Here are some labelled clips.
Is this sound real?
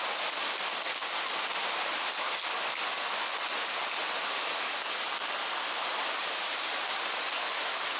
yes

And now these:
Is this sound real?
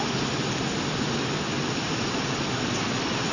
yes